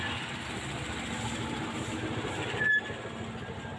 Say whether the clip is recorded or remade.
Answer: recorded